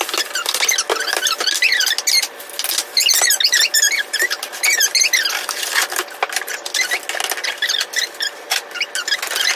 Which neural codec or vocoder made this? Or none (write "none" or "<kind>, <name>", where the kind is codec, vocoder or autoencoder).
none